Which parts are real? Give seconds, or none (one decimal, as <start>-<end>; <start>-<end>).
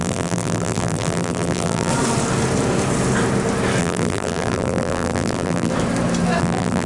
1.9-3.8; 5.7-6.4